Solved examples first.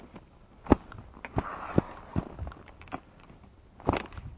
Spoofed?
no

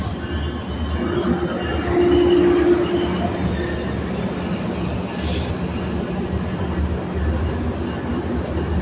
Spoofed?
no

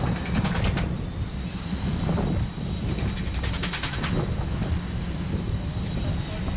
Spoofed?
no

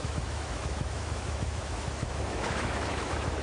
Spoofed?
yes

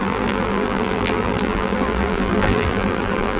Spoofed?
yes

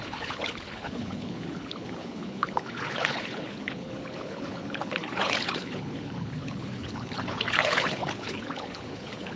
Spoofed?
yes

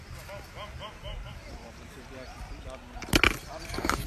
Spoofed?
no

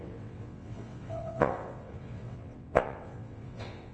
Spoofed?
yes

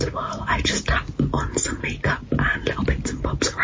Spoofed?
no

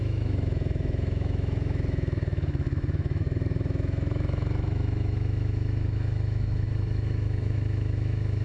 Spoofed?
yes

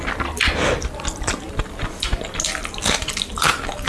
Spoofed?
no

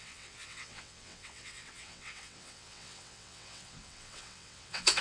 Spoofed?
yes